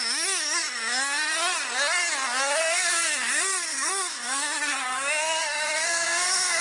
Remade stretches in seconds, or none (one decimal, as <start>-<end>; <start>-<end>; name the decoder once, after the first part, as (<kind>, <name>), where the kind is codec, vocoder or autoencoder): 2.6-6.6 (codec, SNAC)

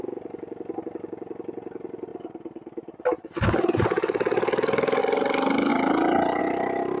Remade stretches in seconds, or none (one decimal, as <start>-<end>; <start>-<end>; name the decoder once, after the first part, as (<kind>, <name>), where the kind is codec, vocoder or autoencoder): 2.1-5.0 (vocoder, BigVGAN v2)